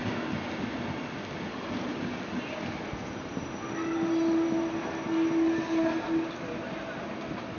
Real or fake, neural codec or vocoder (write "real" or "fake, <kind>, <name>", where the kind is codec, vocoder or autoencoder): real